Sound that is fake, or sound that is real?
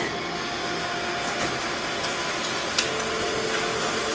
real